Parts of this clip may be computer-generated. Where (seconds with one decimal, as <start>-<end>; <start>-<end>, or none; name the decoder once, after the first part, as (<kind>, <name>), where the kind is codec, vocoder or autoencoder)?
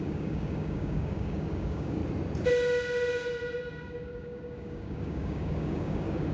0.0-2.0 (codec, DAC); 3.6-6.3